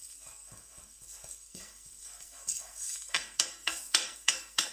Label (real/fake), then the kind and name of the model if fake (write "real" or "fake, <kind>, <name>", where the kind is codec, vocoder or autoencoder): fake, codec, SNAC